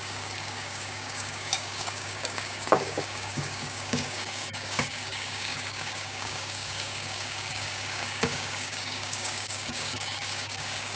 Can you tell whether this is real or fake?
fake